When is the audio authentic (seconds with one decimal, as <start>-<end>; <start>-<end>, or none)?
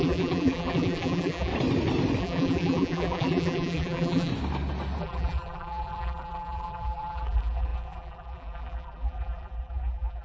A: 1.5-2.2; 4.3-5.0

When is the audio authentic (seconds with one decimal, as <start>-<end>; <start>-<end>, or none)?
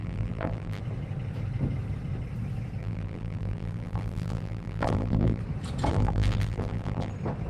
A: 0.8-2.8; 5.4-5.9; 7.1-7.5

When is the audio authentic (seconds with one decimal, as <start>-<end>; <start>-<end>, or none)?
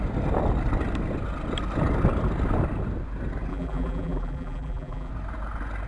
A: 0.0-3.5; 5.1-5.9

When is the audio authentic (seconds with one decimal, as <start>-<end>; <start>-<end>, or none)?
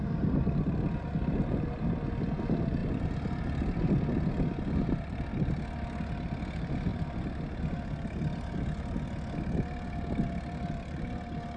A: 0.0-11.6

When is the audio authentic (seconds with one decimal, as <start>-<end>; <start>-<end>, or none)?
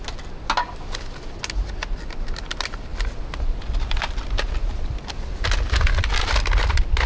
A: 0.0-7.1